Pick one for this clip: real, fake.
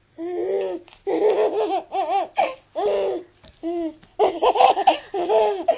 real